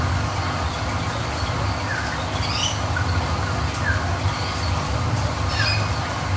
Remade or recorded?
recorded